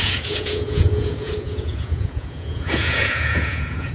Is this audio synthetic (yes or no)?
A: yes